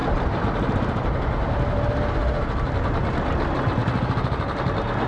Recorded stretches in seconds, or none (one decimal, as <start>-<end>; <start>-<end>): 0.0-5.1